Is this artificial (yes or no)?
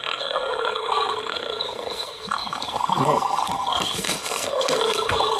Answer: yes